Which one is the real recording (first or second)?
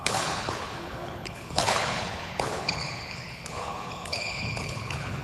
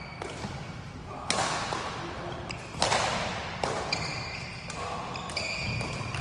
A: second